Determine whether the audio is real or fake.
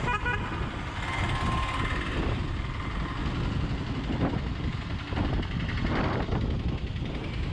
real